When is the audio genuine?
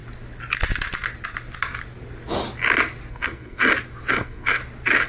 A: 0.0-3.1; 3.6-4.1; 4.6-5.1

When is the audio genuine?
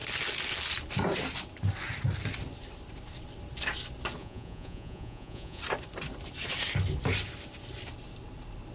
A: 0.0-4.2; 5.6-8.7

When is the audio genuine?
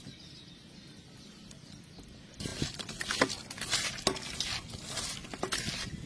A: 0.0-6.1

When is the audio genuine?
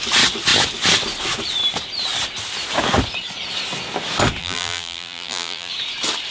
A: 0.0-4.4; 5.7-6.3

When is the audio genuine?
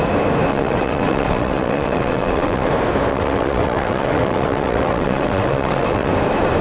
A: 0.0-0.5; 2.7-3.1; 6.1-6.6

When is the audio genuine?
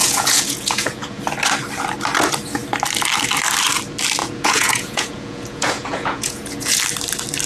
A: 1.2-4.2; 6.8-7.5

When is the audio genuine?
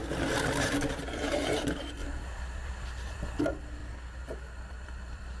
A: 0.0-0.7; 3.8-4.7